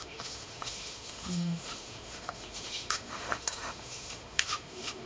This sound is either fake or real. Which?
fake